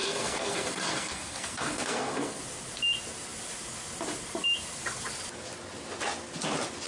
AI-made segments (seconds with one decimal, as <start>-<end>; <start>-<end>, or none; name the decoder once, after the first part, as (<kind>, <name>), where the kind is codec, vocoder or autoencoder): 0.0-2.4 (codec, SNAC)